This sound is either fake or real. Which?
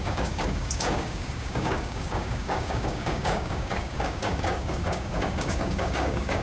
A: fake